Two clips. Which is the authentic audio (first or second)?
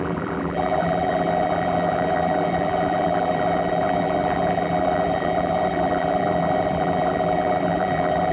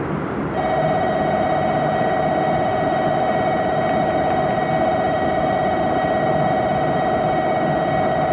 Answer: second